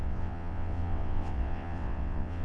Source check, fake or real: fake